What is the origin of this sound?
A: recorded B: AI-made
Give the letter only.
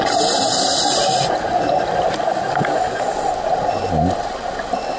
A